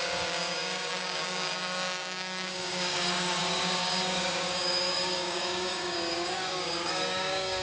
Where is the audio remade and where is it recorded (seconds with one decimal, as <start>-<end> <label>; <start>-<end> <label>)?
0.0-7.6 remade